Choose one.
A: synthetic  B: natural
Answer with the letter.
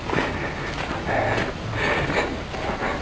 B